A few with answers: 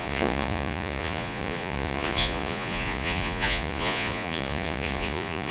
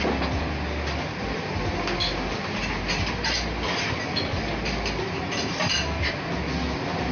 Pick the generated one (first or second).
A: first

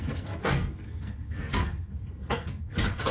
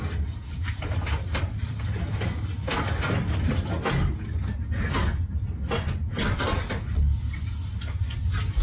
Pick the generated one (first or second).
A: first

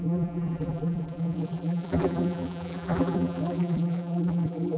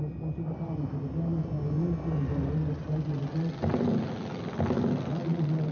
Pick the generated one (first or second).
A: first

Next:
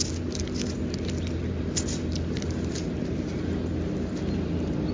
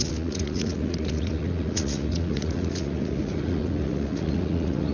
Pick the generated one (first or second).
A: second